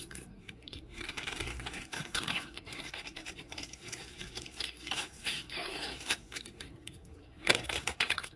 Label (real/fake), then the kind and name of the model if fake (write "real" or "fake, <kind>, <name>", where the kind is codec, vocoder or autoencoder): fake, codec, SNAC